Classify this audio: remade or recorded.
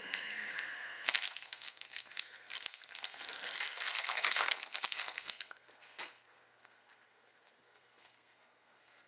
remade